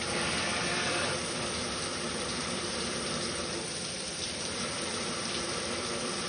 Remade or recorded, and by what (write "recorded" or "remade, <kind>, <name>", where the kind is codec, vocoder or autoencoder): remade, vocoder, BigVGAN v2